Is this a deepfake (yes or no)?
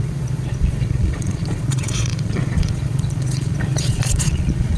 yes